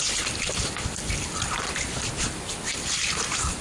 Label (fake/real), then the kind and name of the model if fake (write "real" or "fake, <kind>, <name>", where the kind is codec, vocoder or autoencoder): real